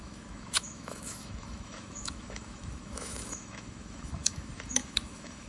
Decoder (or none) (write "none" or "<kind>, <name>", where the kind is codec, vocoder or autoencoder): autoencoder, DAC-VAE